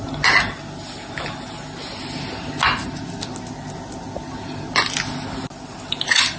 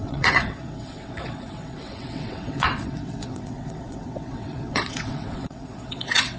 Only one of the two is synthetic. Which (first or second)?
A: second